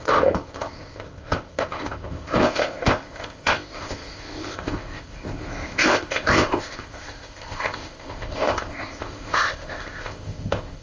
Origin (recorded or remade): remade